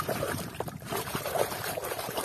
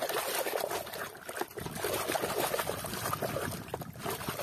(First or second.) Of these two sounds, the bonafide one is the second